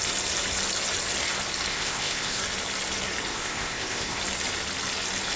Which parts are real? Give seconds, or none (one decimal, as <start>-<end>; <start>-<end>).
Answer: 0.0-1.7; 2.4-3.3; 4.2-5.4